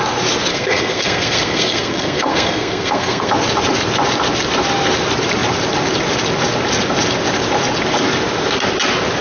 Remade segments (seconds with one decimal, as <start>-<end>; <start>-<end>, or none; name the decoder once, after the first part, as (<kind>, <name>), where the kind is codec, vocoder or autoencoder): 0.5-3.3 (codec, SNAC)